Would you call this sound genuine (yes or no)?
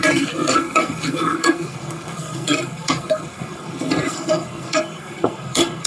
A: no